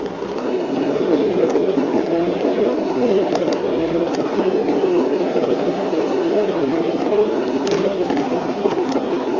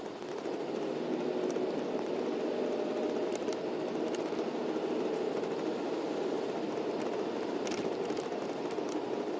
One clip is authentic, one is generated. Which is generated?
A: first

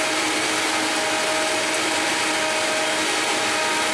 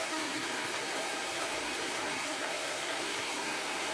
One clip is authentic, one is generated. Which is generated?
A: second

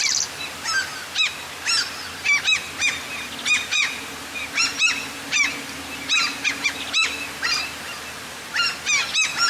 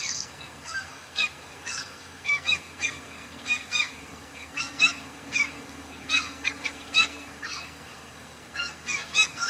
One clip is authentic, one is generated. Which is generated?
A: second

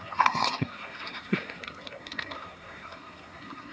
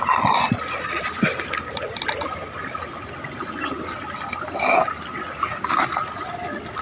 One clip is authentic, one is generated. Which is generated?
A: first